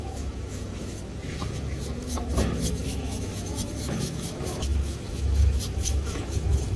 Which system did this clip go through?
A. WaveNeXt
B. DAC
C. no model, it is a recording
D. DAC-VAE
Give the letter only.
D